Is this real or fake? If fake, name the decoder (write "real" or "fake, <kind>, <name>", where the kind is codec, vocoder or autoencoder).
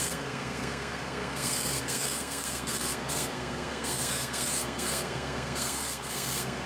fake, codec, SNAC